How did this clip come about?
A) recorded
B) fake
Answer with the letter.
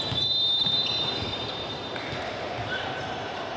B